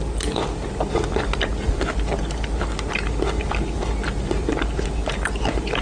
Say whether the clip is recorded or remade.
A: recorded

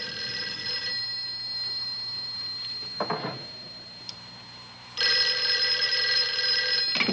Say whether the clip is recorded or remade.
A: recorded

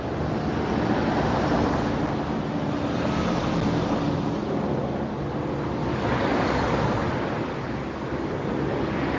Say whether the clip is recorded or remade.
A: recorded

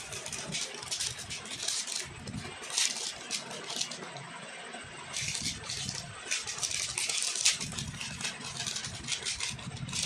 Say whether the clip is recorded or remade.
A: recorded